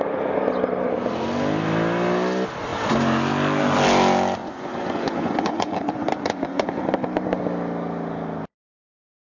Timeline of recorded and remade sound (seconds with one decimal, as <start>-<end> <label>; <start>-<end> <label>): 0.0-4.4 recorded; 4.4-6.8 remade; 6.8-9.2 recorded